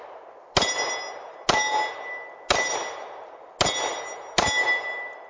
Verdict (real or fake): real